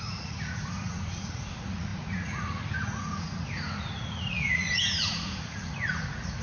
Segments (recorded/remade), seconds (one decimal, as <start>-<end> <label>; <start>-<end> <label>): 0.0-6.4 remade